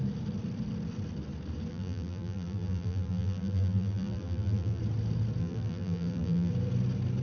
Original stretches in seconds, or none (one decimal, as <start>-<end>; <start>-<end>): 0.0-1.7; 4.8-5.4; 6.5-7.2